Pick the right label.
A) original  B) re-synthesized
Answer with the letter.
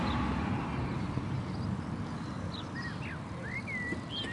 A